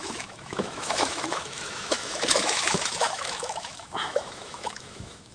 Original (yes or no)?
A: no